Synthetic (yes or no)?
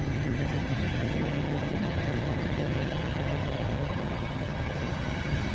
yes